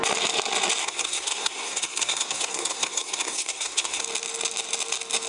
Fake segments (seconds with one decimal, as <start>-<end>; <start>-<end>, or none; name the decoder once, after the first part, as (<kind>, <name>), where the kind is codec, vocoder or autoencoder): 0.8-4.0 (codec, SNAC)

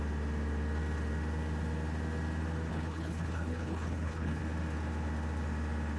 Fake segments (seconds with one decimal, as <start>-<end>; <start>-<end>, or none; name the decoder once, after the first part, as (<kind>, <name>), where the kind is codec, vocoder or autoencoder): 2.7-4.4 (codec, HILCodec)